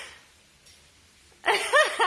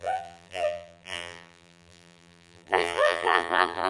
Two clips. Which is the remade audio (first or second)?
second